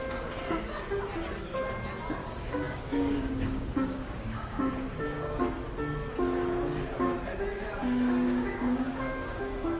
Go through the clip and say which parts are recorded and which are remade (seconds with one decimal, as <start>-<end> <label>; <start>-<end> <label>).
0.0-2.2 recorded; 2.2-5.4 remade; 5.4-7.8 recorded; 7.8-9.4 remade; 9.4-9.8 recorded